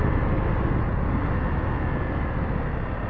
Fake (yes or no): no